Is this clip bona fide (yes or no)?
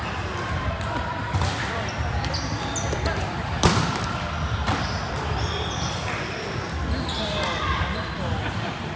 no